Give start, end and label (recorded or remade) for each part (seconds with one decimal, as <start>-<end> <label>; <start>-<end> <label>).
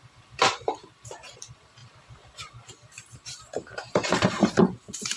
0.0-5.2 remade